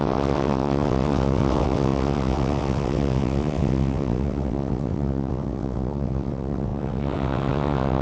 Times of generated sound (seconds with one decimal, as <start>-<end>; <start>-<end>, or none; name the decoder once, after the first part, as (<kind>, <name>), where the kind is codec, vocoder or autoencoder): 0.0-8.0 (vocoder, WaveNeXt)